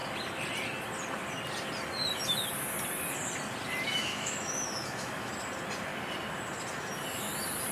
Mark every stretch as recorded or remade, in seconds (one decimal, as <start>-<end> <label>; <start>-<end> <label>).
0.0-3.9 recorded; 3.9-5.3 remade; 5.3-7.7 recorded